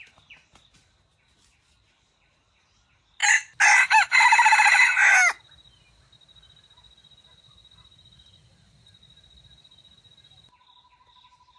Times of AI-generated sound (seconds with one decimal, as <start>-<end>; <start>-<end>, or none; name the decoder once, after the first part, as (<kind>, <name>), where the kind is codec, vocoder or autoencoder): none